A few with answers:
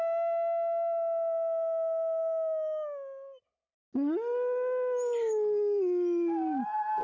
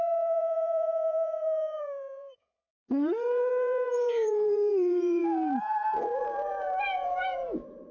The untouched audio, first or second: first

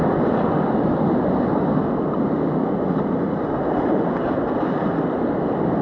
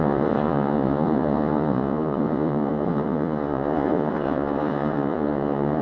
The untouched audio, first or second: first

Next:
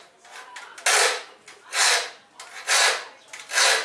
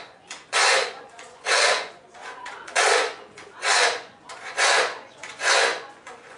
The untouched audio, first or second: first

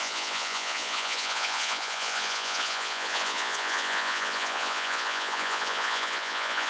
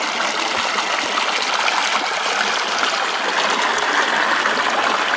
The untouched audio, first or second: second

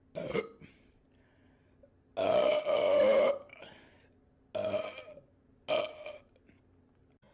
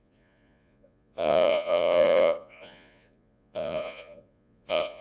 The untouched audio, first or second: first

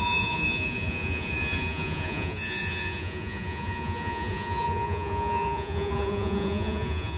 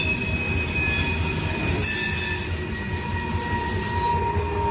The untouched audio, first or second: second